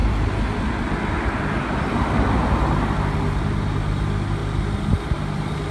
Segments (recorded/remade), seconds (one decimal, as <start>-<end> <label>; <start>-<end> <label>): 0.0-5.7 recorded